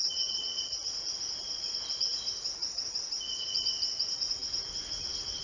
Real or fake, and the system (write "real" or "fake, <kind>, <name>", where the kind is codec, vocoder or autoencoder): real